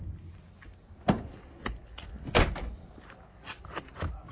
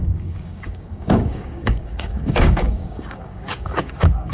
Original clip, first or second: first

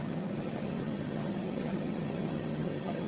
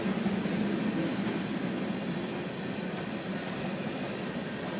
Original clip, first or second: second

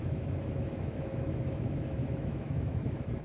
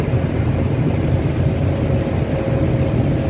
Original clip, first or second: second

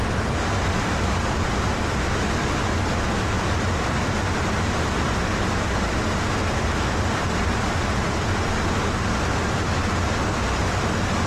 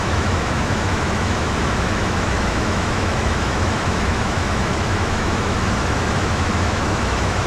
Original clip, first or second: first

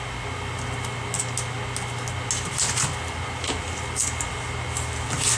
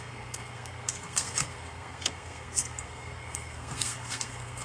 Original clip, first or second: first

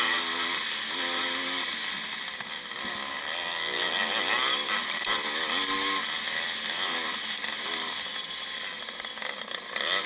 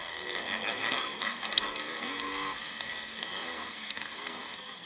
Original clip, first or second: first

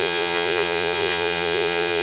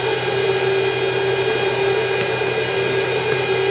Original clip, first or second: second